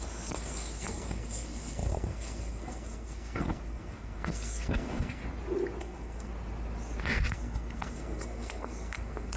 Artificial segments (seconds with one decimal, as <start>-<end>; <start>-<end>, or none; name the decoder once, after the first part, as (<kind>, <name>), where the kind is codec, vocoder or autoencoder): 0.0-5.2 (codec, SNAC); 5.8-6.3; 7.0-9.4